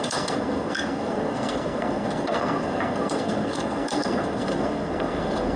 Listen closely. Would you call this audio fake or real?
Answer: fake